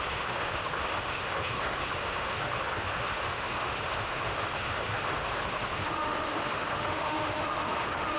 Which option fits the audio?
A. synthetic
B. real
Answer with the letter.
A